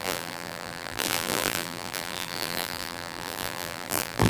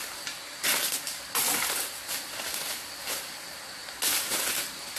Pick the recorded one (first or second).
second